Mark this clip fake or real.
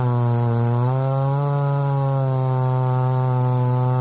real